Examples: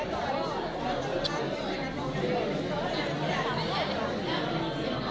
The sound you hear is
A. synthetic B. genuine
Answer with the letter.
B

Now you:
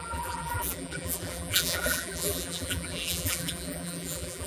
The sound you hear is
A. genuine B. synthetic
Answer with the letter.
B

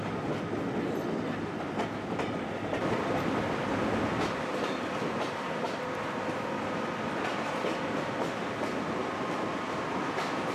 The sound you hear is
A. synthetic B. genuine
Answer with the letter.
B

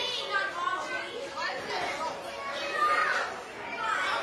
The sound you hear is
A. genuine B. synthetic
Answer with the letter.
A